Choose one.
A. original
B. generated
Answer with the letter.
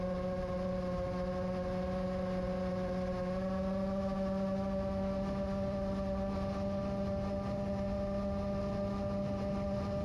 A